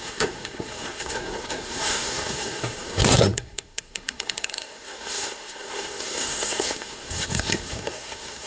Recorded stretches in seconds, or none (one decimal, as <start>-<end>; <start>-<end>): none